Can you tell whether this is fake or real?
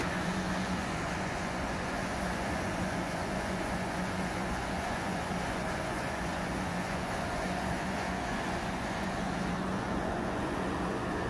fake